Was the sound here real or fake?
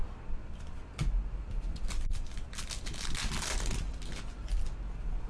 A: real